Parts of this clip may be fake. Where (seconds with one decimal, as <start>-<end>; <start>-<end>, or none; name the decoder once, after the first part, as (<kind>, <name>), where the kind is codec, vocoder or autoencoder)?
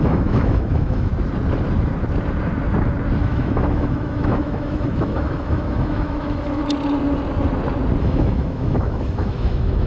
0.0-1.1 (autoencoder, DAC-VAE); 3.2-6.6; 8.0-9.9